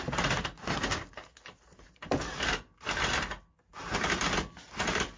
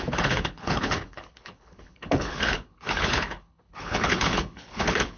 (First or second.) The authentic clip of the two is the first